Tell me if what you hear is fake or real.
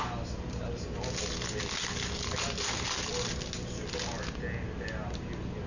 real